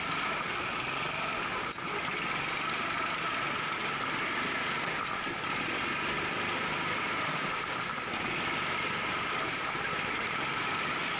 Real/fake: real